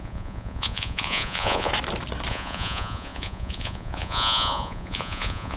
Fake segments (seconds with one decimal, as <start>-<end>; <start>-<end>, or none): 0.0-1.7; 2.3-5.6